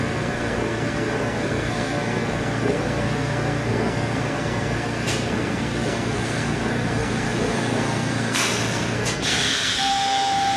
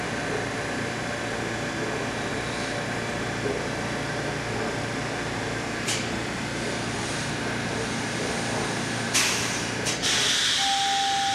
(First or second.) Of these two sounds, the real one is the second